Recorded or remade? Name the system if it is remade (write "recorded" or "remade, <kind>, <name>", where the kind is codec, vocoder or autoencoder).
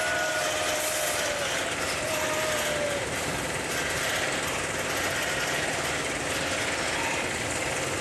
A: recorded